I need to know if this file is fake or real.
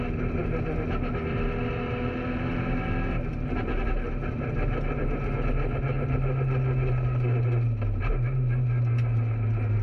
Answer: real